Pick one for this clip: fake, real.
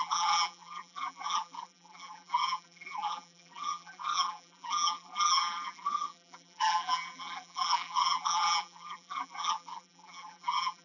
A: fake